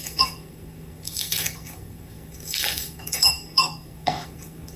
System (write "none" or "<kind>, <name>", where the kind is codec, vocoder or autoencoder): codec, SNAC